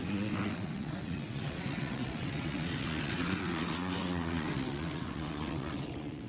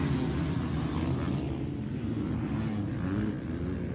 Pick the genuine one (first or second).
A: second